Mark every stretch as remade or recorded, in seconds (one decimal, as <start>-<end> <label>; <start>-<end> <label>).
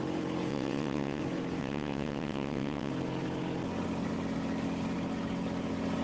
0.0-0.5 recorded; 0.5-1.2 remade; 1.2-1.6 recorded; 1.6-2.9 remade; 2.9-6.0 recorded